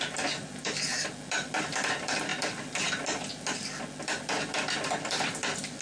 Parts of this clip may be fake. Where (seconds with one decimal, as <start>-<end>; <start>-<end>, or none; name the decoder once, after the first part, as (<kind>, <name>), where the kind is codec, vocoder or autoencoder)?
none